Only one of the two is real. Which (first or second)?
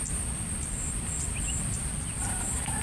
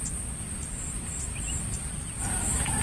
second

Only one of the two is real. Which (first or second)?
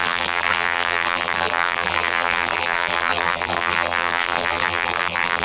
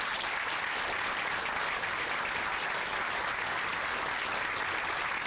second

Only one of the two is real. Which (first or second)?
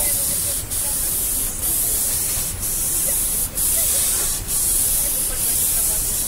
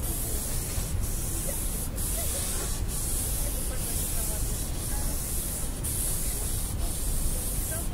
second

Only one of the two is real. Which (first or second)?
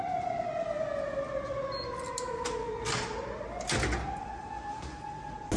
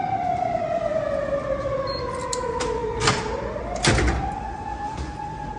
first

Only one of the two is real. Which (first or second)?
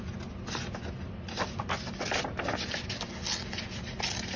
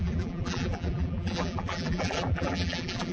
first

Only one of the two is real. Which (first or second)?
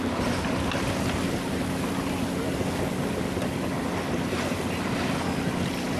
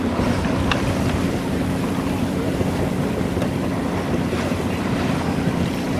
first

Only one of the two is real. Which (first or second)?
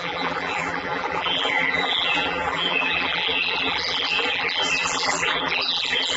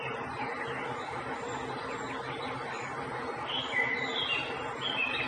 second